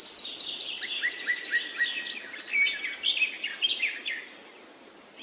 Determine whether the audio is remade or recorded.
recorded